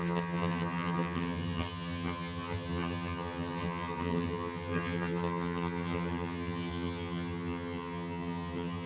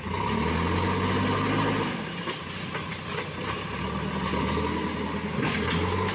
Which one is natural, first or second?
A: second